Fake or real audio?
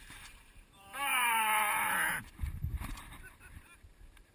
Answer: fake